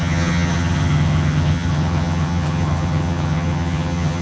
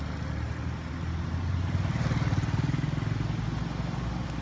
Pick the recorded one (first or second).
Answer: second